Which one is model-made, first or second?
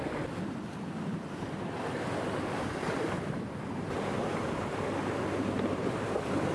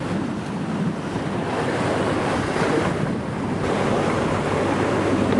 first